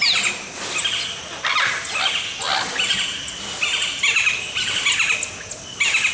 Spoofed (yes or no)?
no